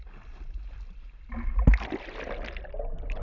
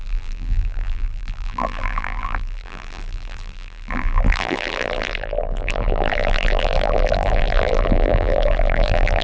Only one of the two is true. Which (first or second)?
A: first